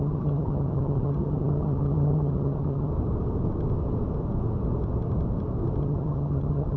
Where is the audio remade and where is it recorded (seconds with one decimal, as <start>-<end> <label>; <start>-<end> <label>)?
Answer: 0.0-2.9 remade; 2.9-5.8 recorded; 5.8-6.8 remade